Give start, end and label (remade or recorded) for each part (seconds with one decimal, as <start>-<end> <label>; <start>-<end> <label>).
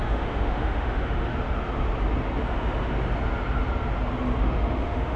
0.0-1.3 remade; 1.3-4.4 recorded; 4.4-5.2 remade